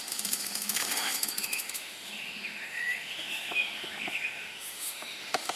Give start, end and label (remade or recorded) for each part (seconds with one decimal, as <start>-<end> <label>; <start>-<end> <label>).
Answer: 0.0-5.6 remade